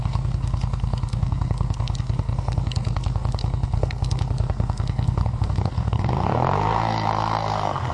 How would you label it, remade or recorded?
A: remade